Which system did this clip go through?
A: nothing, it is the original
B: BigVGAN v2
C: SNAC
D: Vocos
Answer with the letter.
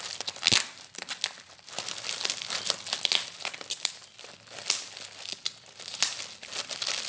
A